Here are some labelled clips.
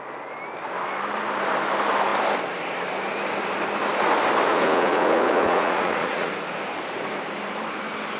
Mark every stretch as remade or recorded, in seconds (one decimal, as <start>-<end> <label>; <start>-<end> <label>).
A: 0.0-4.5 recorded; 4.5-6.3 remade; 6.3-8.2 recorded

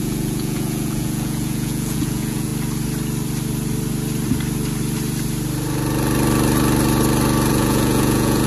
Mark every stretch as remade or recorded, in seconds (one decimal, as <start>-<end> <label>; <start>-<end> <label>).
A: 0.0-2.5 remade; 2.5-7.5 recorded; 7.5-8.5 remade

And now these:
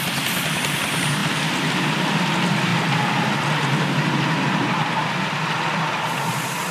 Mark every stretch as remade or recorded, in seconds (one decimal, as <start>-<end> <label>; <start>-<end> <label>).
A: 0.0-6.7 recorded